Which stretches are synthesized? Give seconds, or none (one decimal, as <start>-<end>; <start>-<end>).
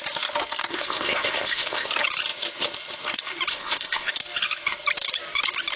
0.7-1.9; 3.5-4.1